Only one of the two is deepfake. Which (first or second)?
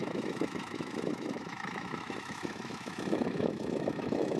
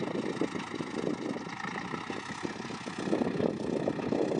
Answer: first